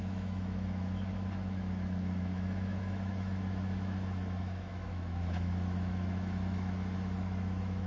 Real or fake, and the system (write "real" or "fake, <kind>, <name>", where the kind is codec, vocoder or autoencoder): fake, autoencoder, DAC-VAE